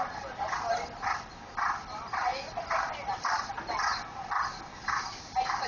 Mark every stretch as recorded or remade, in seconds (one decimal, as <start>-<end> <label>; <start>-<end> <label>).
0.0-5.7 recorded